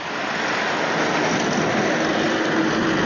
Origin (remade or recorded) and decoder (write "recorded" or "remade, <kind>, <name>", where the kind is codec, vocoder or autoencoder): recorded